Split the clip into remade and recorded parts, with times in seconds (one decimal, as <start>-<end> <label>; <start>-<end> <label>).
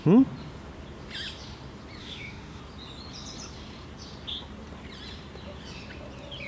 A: 0.0-2.0 recorded; 2.0-2.6 remade; 2.6-6.5 recorded